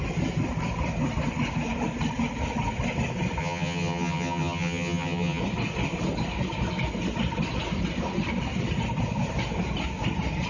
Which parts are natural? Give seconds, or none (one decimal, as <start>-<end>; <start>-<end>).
0.0-3.4; 5.4-10.5